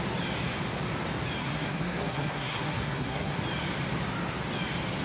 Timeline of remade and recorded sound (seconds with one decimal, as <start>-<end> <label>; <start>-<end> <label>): 0.0-1.4 recorded; 1.4-3.4 remade; 3.4-5.0 recorded